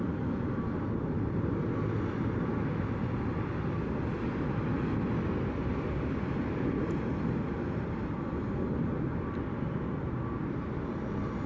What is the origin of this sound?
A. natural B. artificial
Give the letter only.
A